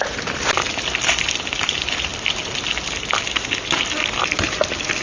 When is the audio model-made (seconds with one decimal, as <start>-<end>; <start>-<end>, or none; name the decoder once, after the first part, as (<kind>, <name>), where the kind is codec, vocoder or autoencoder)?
none